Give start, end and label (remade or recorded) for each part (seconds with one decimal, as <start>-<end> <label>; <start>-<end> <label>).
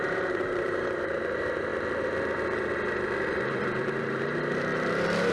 0.0-1.7 remade; 1.7-3.8 recorded; 3.8-5.3 remade